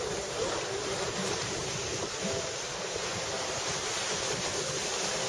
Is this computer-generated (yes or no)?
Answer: yes